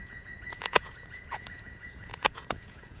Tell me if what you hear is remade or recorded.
remade